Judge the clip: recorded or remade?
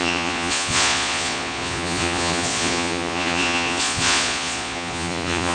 remade